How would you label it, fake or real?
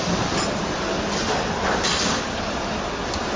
real